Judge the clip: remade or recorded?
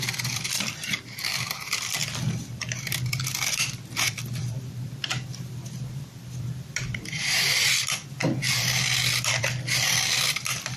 remade